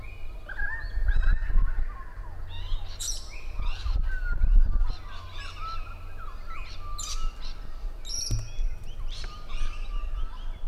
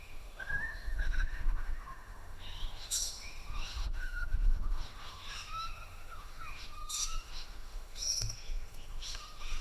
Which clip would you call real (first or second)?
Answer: first